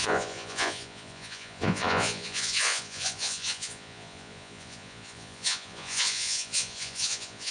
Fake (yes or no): yes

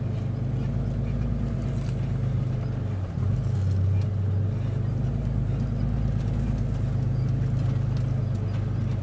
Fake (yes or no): no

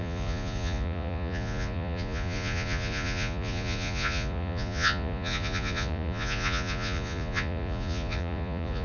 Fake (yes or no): yes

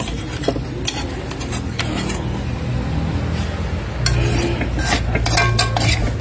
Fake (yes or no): no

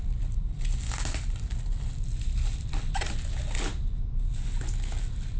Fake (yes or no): no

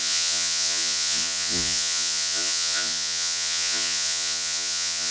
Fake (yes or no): yes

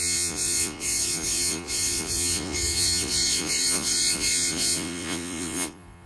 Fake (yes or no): yes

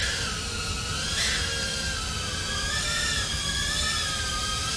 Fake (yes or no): no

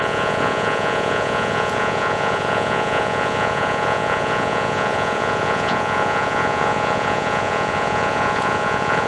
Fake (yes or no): yes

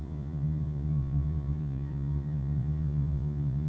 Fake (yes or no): yes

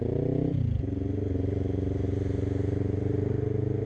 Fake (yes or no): no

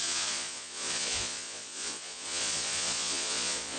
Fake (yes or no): yes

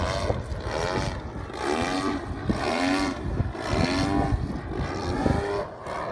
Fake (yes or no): no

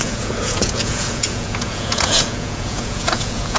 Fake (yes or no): yes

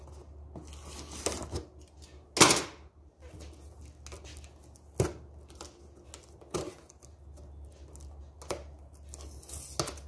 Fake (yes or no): no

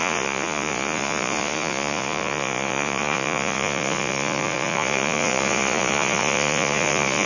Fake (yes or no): yes